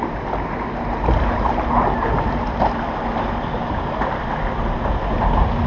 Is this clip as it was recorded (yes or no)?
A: yes